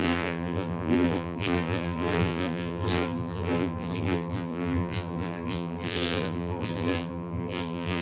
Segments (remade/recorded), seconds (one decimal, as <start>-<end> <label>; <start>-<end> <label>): 0.0-8.0 remade